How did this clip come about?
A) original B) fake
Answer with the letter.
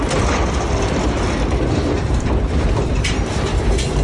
B